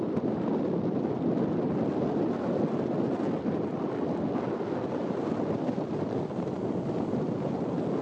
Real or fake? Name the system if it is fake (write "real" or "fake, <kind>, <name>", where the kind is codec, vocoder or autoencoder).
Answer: real